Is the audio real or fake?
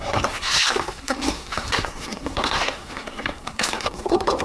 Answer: fake